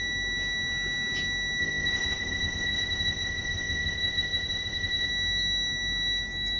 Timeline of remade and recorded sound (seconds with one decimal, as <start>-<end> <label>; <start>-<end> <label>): 0.0-1.6 recorded; 1.6-5.1 remade; 5.1-6.6 recorded